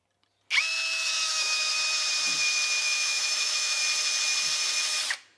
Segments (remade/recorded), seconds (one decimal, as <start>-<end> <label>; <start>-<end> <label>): 0.0-0.6 recorded; 0.6-1.7 remade; 1.7-2.8 recorded; 2.8-3.8 remade; 3.8-5.4 recorded